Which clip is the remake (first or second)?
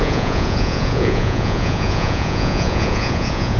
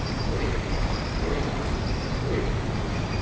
first